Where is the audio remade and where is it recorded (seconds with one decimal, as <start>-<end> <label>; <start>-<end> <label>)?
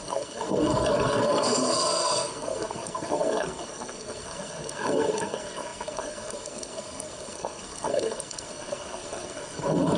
0.0-10.0 remade